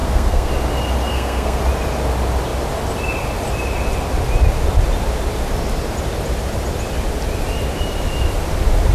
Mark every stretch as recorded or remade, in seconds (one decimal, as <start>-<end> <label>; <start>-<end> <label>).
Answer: 0.0-0.5 remade; 0.5-1.1 recorded; 1.1-1.6 remade; 1.6-8.9 recorded